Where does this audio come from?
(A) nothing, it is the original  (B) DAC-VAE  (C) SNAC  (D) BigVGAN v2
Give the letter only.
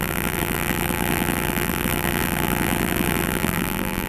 D